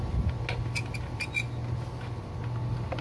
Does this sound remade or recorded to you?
recorded